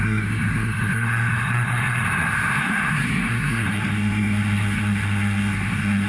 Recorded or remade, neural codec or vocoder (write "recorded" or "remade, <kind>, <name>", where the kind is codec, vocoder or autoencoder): remade, codec, SNAC